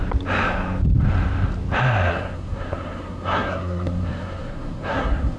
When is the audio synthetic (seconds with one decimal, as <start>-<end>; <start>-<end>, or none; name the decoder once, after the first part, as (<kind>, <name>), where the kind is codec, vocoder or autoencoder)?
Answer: 2.1-5.4 (codec, SNAC)